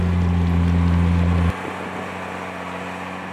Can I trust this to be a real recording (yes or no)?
yes